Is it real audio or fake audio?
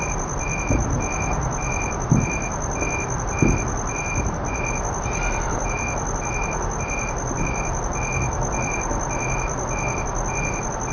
real